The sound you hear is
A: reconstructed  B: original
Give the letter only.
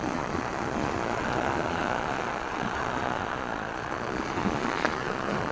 A